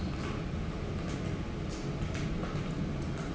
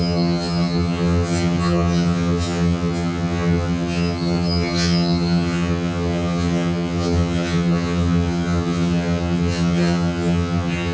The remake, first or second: second